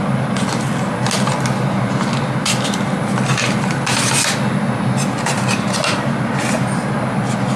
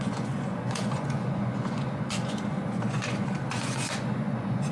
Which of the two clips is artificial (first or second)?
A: second